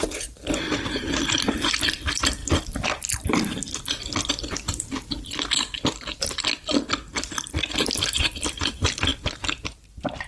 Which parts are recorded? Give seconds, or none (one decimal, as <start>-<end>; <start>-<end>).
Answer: 2.4-4.3